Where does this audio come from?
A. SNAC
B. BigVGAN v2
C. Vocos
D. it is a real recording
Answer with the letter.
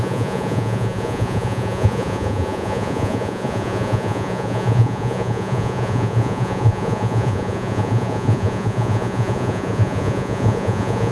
C